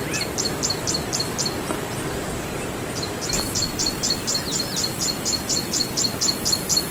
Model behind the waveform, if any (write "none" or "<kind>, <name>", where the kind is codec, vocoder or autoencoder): none